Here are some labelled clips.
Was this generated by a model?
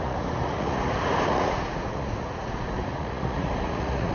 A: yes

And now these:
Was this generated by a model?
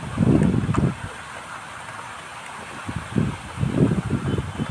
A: no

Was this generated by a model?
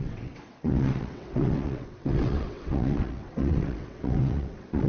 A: yes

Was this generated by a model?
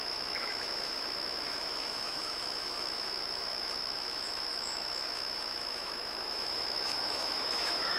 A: yes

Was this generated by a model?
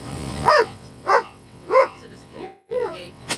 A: yes